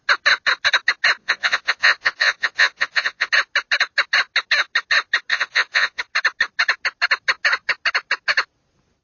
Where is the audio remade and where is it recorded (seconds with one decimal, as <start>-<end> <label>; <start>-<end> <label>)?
0.0-1.2 recorded; 1.2-3.3 remade; 3.3-5.3 recorded; 5.3-6.0 remade; 6.0-9.0 recorded